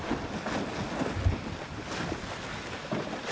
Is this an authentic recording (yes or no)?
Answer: yes